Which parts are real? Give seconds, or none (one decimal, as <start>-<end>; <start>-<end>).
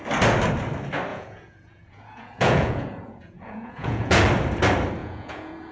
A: 0.0-1.1; 4.2-5.0